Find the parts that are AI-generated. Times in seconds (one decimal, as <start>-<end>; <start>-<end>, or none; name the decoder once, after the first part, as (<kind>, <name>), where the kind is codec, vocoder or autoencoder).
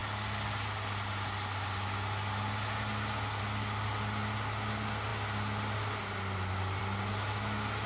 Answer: none